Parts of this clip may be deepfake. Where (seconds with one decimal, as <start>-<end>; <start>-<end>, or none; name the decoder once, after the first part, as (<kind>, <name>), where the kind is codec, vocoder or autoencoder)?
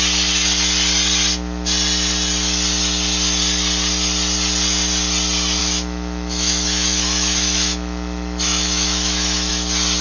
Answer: 5.6-9.5 (autoencoder, DAC-VAE)